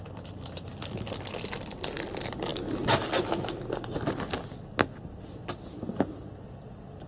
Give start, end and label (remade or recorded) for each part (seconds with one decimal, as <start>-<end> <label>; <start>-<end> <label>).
0.0-7.1 recorded